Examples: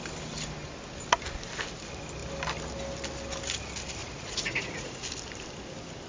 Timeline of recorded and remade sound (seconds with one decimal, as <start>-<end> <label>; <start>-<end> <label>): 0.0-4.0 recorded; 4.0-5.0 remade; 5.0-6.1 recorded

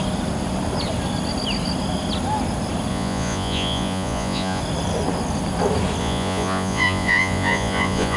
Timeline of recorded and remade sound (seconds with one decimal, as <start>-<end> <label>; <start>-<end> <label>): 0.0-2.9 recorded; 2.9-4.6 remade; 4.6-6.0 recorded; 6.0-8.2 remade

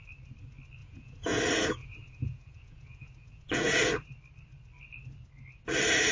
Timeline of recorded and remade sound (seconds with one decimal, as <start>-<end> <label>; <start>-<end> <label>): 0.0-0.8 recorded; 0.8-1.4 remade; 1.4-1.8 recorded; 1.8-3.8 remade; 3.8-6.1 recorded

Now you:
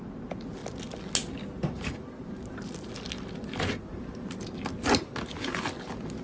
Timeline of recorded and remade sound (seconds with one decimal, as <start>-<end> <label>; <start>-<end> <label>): 0.0-6.2 recorded

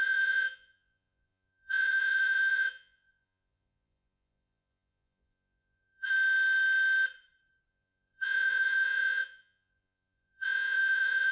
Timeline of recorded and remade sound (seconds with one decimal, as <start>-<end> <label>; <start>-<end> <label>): 0.0-6.1 remade; 6.1-7.7 recorded; 7.7-11.3 remade

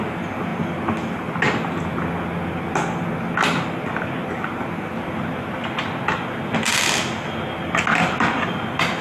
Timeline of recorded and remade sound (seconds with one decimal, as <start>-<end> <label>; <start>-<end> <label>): 0.0-9.0 recorded

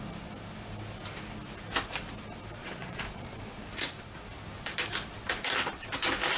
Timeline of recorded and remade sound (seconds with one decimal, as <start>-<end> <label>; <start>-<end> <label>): 0.0-2.6 recorded; 2.6-3.6 remade; 3.6-6.4 recorded

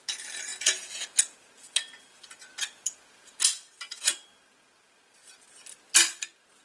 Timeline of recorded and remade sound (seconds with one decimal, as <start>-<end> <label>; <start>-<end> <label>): 0.0-0.5 recorded; 0.5-4.4 remade; 4.4-6.6 recorded